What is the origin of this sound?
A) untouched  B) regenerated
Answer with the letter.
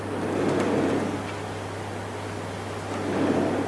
A